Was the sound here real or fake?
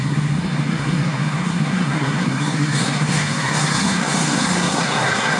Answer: fake